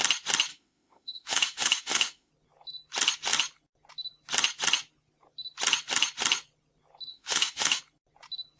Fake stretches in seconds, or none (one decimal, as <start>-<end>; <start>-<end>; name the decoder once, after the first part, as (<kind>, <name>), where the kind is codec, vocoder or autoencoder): 0.5-2.3 (autoencoder, DAC-VAE); 7.1-7.8